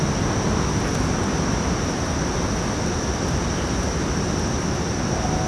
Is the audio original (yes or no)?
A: yes